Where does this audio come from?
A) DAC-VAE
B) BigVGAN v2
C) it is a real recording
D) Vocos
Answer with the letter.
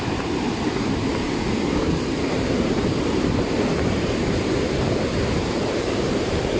B